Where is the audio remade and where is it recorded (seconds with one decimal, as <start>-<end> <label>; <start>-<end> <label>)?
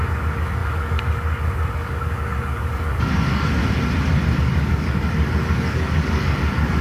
0.0-3.6 remade; 3.6-4.4 recorded; 4.4-6.8 remade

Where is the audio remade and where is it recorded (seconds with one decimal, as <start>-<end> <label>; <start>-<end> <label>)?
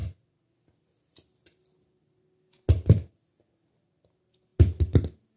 0.0-5.4 recorded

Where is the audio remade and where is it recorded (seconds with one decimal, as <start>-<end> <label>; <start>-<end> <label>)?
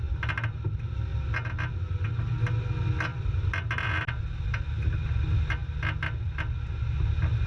0.0-7.5 recorded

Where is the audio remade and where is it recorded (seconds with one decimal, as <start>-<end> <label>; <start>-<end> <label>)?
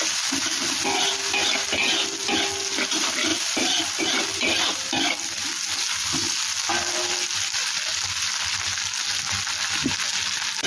0.0-3.3 recorded; 3.3-4.0 remade; 4.0-10.7 recorded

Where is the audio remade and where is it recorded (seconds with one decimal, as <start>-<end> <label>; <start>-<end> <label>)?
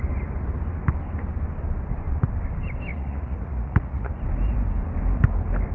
0.0-2.9 recorded; 2.9-4.1 remade; 4.1-5.7 recorded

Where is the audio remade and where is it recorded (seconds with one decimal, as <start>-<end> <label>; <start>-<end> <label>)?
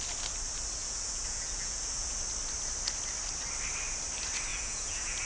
0.0-0.8 recorded; 0.8-2.2 remade; 2.2-4.5 recorded; 4.5-5.3 remade